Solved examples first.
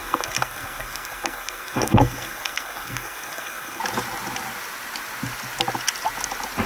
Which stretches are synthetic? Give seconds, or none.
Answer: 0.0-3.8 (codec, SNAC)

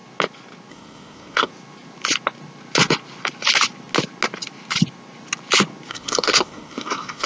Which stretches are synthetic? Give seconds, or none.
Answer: 0.7-1.5 (codec, SNAC); 5.9-7.3

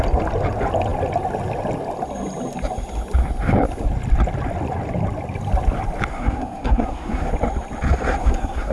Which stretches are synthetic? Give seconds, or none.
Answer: 6.1-7.3 (codec, SNAC); 8.2-8.7

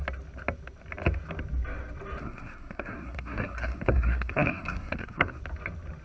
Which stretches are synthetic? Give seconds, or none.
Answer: 2.2-5.4 (codec, SNAC)

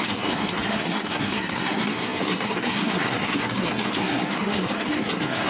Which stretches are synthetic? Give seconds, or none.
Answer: 0.0-5.5 (codec, SNAC)